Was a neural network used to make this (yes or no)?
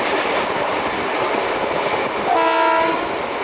no